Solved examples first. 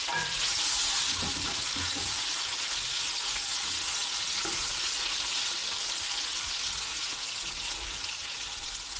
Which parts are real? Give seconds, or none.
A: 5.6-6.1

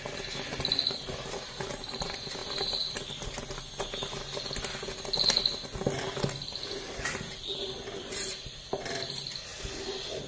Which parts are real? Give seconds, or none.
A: 0.0-10.3

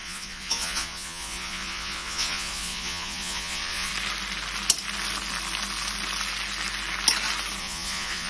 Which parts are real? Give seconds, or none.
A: 3.9-7.6

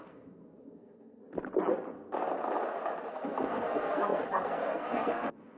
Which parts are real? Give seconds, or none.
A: 1.2-3.1